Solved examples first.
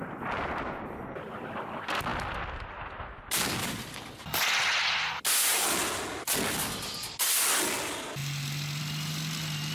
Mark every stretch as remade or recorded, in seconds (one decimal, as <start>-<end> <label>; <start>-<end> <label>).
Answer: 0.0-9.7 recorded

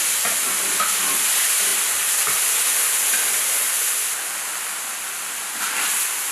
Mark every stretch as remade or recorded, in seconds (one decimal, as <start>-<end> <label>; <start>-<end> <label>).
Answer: 0.0-6.3 remade

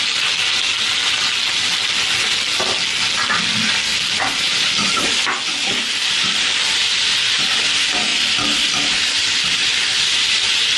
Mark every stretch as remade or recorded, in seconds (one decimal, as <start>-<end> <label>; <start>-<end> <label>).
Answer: 0.0-3.9 recorded; 3.9-7.4 remade; 7.4-10.8 recorded